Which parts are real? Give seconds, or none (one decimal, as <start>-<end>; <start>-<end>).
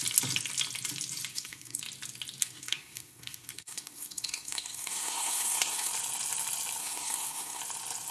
0.0-1.3; 1.8-2.4; 5.9-6.8; 7.6-8.1